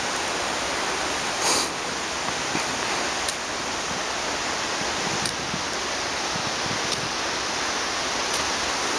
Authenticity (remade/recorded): recorded